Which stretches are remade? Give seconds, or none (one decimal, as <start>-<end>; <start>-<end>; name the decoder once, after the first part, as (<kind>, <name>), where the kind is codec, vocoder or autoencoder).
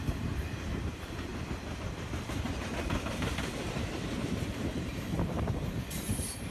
0.0-1.3 (vocoder, BigVGAN v2); 2.7-6.5